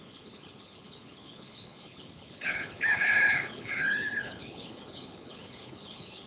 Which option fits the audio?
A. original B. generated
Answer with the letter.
B